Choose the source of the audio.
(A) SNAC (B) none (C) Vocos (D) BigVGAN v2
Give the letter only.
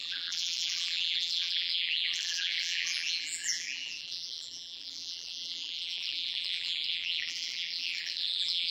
D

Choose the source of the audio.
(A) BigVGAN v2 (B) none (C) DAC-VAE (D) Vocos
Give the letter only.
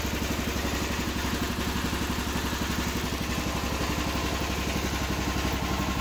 B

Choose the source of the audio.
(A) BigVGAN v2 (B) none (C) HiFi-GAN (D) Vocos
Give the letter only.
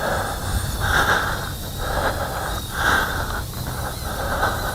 B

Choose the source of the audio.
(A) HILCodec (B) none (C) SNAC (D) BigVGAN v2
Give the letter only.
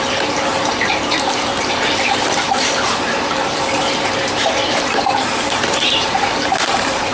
D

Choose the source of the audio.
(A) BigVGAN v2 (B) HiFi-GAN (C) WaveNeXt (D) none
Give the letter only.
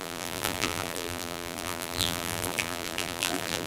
A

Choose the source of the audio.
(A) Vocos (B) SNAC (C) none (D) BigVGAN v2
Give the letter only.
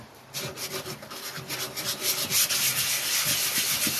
C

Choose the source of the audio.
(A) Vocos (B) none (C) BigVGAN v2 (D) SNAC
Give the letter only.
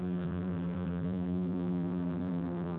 C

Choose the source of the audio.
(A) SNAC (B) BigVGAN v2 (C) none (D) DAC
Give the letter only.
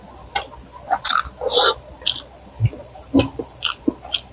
B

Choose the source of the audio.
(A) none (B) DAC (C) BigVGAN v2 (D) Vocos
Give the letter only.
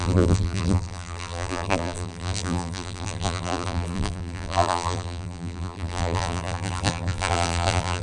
C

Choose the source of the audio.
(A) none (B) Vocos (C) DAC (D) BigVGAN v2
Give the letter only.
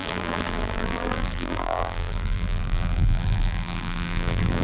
D